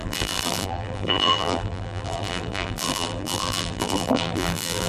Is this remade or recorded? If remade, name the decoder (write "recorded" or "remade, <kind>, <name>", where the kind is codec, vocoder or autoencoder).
remade, vocoder, BigVGAN v2